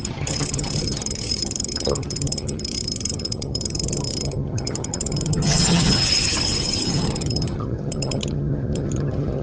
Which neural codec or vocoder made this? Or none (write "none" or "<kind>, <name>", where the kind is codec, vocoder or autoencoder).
vocoder, HiFi-GAN